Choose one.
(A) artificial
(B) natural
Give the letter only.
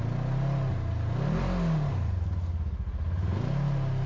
B